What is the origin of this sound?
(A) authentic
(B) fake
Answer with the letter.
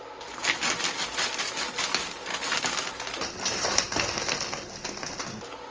A